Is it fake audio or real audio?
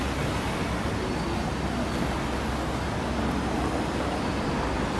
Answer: real